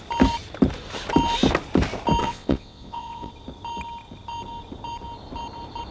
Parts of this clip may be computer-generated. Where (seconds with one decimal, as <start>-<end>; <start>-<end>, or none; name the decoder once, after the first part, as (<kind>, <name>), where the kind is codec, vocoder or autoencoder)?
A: 2.2-3.3 (vocoder, WaveNeXt)